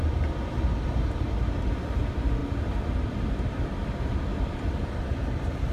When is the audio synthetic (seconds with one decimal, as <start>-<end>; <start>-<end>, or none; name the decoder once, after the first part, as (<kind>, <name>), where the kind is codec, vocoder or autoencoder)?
4.3-5.2 (vocoder, BigVGAN v2)

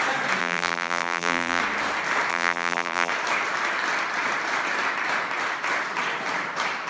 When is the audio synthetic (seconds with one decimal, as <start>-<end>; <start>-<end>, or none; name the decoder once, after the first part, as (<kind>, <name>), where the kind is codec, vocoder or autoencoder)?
0.4-1.6 (vocoder, BigVGAN v2); 2.3-3.1

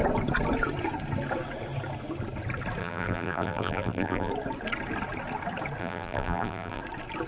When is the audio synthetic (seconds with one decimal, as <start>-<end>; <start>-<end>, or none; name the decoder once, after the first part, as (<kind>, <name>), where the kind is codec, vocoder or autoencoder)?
2.8-4.3 (vocoder, BigVGAN v2); 5.8-6.8

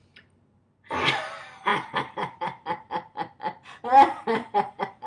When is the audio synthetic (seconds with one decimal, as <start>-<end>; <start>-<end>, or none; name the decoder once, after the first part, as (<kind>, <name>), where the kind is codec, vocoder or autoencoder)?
1.7-5.1 (vocoder, BigVGAN v2)

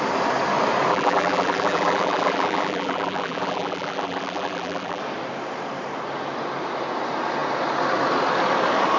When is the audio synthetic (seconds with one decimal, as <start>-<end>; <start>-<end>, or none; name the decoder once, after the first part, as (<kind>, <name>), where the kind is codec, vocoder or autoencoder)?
0.9-5.0 (vocoder, BigVGAN v2)

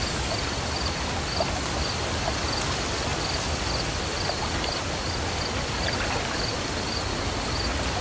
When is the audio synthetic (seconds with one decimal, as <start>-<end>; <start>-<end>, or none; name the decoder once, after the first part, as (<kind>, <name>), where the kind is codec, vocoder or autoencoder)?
none

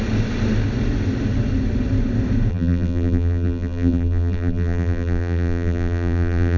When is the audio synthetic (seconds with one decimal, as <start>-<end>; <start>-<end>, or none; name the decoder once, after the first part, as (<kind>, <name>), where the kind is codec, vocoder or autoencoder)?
2.5-6.6 (vocoder, BigVGAN v2)